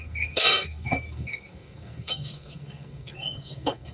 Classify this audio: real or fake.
fake